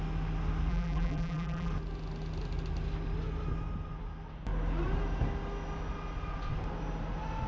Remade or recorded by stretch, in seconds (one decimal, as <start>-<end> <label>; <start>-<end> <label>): 0.0-0.7 recorded; 0.7-1.7 remade; 1.7-7.5 recorded